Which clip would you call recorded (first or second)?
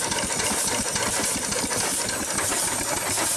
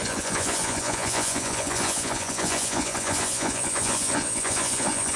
first